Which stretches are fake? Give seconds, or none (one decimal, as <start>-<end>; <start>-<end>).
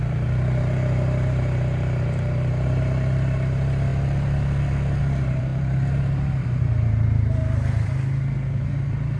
0.0-3.9; 5.0-7.4; 8.6-9.2